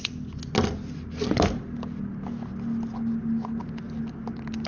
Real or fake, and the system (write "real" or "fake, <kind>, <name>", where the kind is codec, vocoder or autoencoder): real